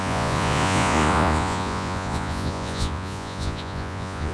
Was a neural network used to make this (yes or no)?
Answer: yes